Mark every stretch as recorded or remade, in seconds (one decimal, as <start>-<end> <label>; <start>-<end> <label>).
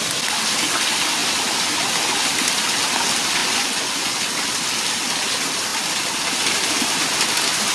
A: 0.0-3.4 recorded; 3.4-4.2 remade; 4.2-7.7 recorded